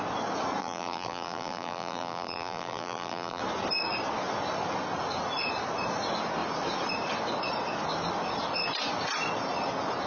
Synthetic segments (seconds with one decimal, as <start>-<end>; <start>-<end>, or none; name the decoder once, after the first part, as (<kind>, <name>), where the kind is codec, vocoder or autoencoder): 0.6-3.4 (vocoder, BigVGAN v2)